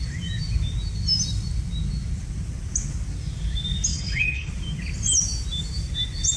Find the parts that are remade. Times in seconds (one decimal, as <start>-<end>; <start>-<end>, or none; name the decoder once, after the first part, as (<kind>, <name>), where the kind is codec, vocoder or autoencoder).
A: 3.9-4.5 (codec, HILCodec)